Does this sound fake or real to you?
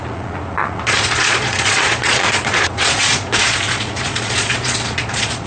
fake